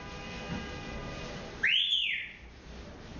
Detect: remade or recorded recorded